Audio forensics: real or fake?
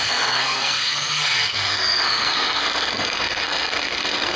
fake